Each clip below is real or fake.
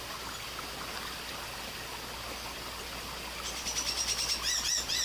real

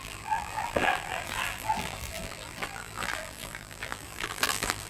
fake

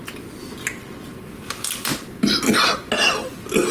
real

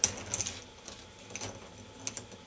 real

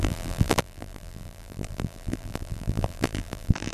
fake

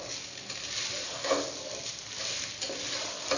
real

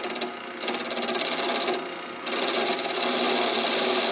real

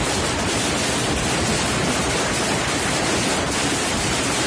real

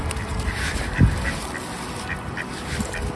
real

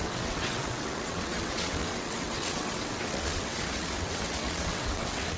fake